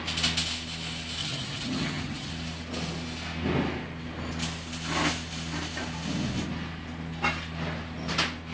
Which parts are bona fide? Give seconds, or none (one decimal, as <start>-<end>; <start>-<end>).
0.0-1.2; 2.3-8.5

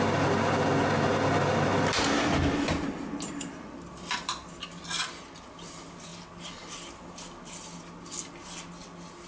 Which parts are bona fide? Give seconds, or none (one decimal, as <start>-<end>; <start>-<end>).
0.0-9.3

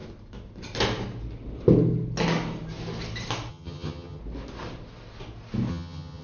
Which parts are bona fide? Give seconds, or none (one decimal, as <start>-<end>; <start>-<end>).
0.0-3.5; 4.2-5.7

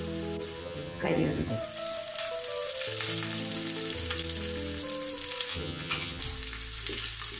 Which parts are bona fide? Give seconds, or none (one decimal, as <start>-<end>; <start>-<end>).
0.0-0.6; 1.5-5.5; 6.2-7.4